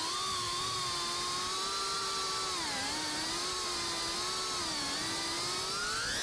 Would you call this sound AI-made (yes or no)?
no